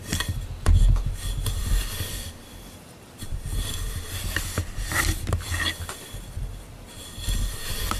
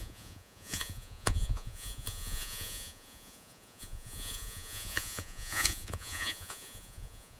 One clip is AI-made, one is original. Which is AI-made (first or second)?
second